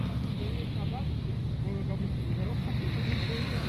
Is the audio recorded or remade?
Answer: recorded